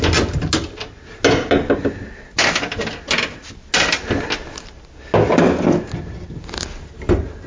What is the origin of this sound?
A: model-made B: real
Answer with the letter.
B